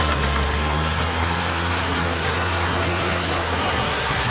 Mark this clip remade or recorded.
remade